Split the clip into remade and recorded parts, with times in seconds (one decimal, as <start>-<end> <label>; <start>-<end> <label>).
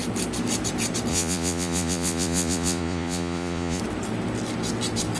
0.0-1.1 recorded; 1.1-3.8 remade; 3.8-5.2 recorded